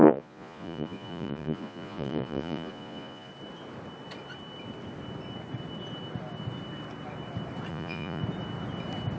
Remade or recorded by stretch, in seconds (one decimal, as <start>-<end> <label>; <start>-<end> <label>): 0.0-3.3 remade; 3.3-7.7 recorded; 7.7-8.2 remade; 8.2-9.2 recorded